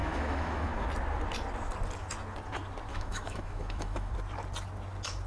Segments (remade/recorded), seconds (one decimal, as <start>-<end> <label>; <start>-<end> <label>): 0.0-0.9 remade; 0.9-2.9 recorded; 2.9-4.1 remade; 4.1-5.3 recorded